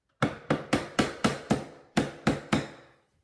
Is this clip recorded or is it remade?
recorded